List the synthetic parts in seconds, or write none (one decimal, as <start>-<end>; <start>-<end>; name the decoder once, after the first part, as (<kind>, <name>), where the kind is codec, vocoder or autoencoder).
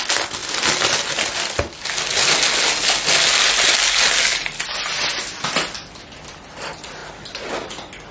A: none